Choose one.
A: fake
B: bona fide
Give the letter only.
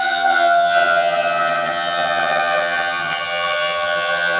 A